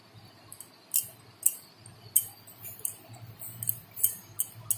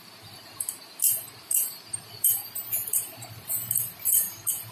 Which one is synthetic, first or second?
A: second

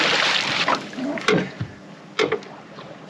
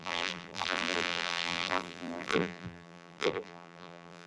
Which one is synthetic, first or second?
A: second